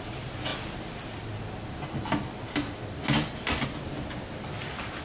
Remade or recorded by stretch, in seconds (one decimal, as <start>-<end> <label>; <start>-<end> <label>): 0.0-5.0 recorded